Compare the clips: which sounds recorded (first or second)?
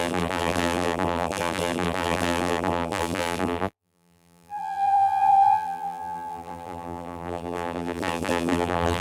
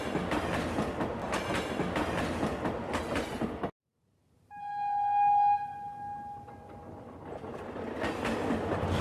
second